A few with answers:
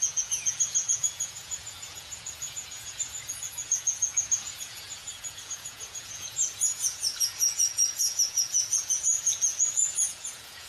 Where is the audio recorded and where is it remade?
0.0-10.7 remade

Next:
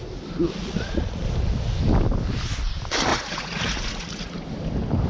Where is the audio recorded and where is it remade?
0.0-0.6 recorded; 0.6-1.2 remade; 1.2-3.1 recorded; 3.1-4.3 remade; 4.3-5.1 recorded